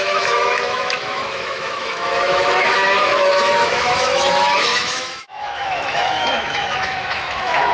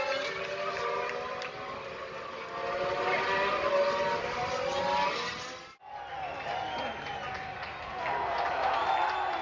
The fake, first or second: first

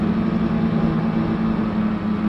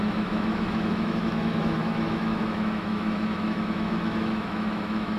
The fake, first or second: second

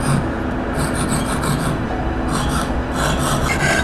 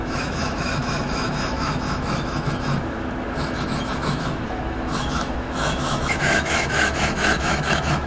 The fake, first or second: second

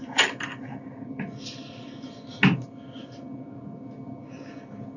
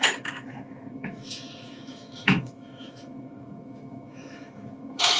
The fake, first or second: second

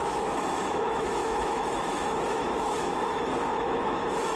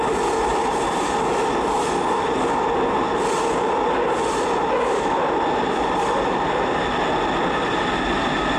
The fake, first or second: first